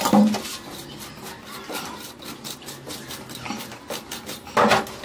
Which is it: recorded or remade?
remade